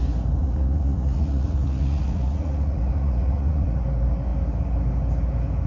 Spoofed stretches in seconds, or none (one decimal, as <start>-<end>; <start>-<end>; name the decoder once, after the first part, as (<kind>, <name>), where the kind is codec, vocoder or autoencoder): 0.4-3.8 (vocoder, Vocos)